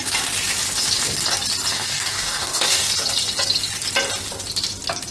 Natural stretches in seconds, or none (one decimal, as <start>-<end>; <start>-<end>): 0.0-1.7; 2.9-5.1